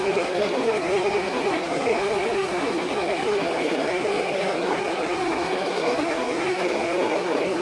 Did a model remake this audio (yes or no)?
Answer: yes